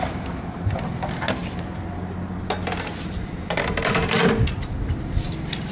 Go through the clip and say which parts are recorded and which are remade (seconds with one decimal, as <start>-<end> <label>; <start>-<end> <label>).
0.0-5.7 recorded